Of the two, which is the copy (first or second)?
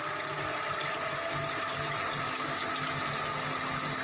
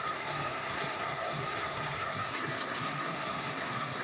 second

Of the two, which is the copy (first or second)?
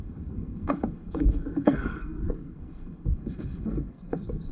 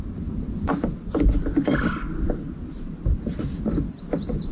first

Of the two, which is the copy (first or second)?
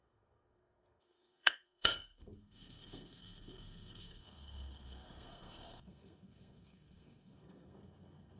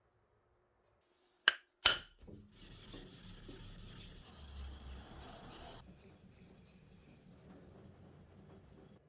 first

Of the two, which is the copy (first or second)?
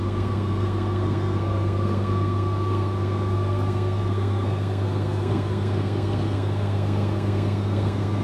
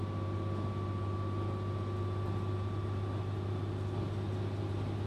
first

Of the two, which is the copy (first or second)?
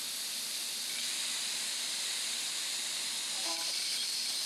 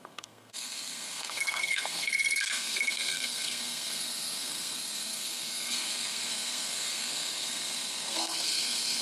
second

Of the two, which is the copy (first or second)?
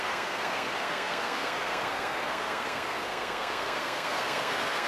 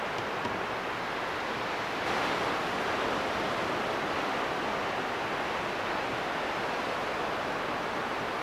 first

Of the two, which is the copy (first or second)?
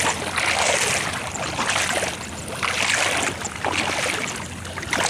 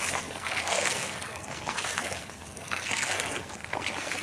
second